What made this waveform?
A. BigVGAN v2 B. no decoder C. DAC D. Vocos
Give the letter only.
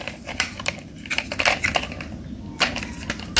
B